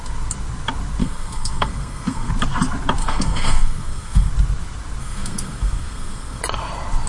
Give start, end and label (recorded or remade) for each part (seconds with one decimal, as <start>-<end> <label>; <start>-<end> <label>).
0.0-1.0 recorded; 1.0-2.3 remade; 2.3-3.0 recorded; 3.0-4.3 remade; 4.3-5.0 recorded; 5.0-6.4 remade; 6.4-7.1 recorded